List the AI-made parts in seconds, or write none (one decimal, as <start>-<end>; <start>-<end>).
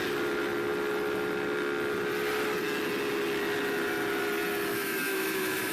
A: 4.7-5.7